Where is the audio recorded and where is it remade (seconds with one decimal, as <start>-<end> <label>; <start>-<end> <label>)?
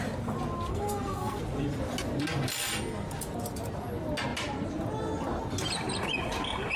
0.0-0.7 recorded; 0.7-1.4 remade; 1.4-6.8 recorded